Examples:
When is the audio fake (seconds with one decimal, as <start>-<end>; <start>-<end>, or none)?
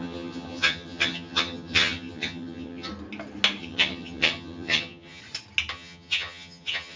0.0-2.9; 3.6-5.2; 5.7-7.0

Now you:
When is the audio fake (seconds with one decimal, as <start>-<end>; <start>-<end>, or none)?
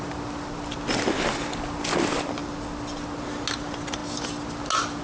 none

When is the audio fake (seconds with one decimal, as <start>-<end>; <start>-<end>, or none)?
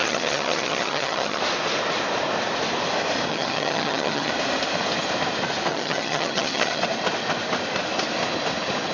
0.0-1.4; 3.3-4.3; 5.7-6.8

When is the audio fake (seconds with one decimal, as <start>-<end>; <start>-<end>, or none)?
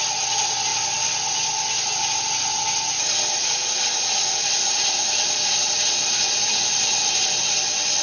none